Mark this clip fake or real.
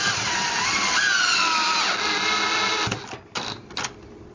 real